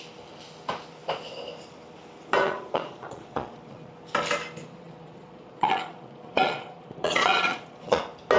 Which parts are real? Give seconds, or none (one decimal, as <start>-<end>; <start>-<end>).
0.0-2.4; 3.9-4.6; 8.0-8.4